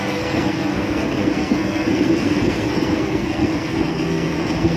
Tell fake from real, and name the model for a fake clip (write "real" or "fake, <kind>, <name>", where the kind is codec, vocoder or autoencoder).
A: fake, codec, SNAC